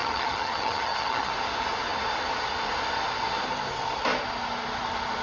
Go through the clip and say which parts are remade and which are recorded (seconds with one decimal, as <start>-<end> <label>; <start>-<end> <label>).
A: 0.0-1.3 remade; 1.3-5.2 recorded